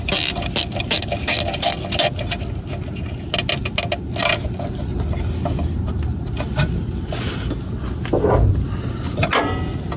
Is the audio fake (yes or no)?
no